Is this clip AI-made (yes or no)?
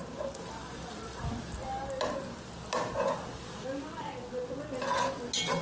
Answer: no